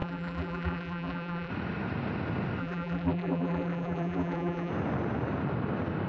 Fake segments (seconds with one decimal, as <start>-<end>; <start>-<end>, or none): 0.0-1.5; 2.6-4.7